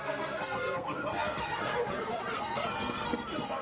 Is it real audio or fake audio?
fake